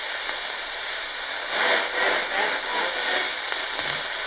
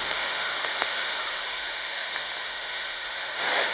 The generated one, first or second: second